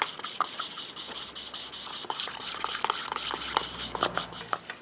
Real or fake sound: real